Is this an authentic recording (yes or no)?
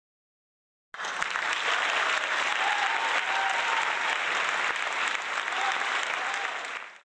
yes